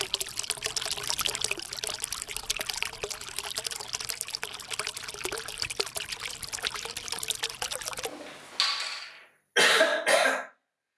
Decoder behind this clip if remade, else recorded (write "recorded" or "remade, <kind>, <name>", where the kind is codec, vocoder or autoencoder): recorded